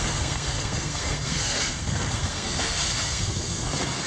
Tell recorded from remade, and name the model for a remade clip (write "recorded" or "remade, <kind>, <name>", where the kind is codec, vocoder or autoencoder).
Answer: remade, codec, SNAC